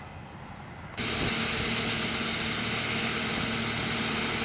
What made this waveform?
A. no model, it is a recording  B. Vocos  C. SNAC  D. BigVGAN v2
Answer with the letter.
A